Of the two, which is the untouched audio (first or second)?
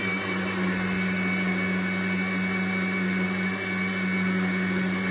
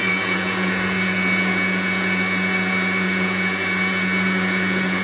first